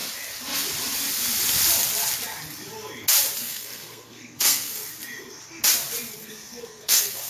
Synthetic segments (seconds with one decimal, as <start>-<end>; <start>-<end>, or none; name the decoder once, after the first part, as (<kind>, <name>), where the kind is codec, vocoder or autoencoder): 3.4-4.9 (codec, SNAC); 6.2-7.3